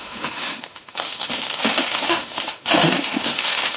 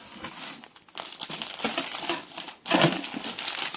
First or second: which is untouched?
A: second